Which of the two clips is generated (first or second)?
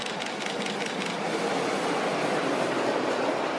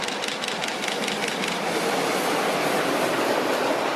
second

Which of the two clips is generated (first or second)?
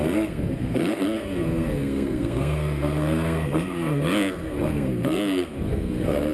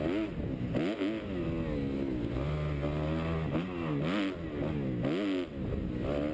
first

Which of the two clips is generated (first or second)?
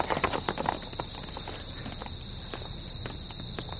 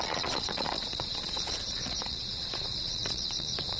second